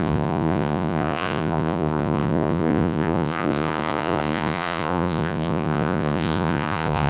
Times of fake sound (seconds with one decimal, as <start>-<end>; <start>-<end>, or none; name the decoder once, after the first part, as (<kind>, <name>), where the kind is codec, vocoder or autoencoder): 0.0-7.1 (vocoder, Vocos)